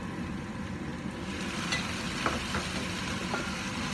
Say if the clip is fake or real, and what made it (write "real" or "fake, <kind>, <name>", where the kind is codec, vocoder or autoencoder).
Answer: real